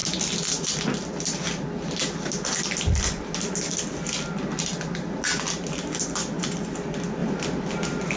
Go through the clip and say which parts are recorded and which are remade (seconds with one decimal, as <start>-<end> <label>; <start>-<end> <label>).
0.0-8.2 recorded